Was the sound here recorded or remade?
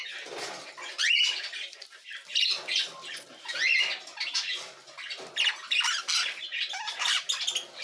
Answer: recorded